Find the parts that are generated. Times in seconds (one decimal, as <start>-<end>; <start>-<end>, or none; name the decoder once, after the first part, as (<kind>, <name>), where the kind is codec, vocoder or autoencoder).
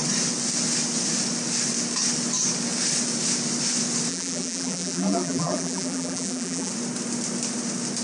4.1-6.7 (vocoder, BigVGAN v2)